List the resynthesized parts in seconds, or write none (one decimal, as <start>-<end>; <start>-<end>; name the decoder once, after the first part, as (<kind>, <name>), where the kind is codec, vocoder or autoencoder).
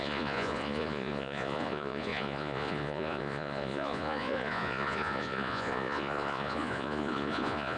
0.0-7.8 (vocoder, Vocos)